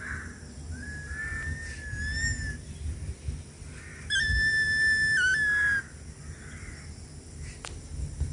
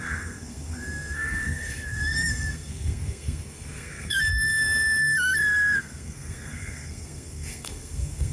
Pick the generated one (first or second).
second